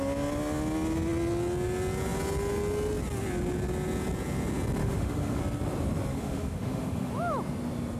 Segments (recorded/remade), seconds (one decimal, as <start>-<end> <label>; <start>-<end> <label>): 0.0-4.8 recorded; 4.8-5.4 remade; 5.4-6.1 recorded; 6.1-7.1 remade; 7.1-8.0 recorded